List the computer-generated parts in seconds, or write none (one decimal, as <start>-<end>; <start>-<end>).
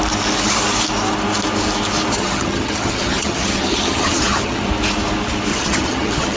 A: 2.1-4.7; 5.5-6.4